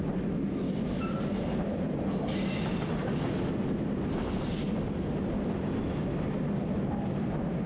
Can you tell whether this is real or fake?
real